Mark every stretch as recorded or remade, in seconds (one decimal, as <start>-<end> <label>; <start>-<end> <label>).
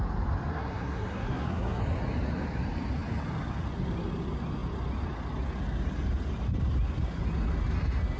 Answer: 0.0-0.5 recorded; 0.5-1.8 remade; 1.8-8.2 recorded